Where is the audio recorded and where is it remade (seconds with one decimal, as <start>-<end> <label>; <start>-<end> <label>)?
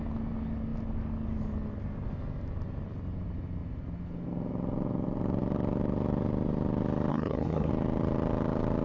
0.0-7.1 recorded; 7.1-7.7 remade; 7.7-8.8 recorded